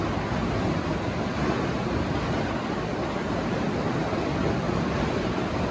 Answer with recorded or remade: recorded